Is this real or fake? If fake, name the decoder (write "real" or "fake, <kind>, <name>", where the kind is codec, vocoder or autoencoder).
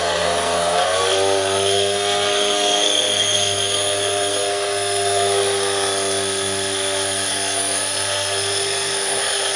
fake, codec, SNAC